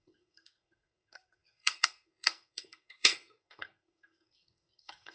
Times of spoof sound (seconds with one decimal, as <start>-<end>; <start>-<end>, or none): 0.0-5.1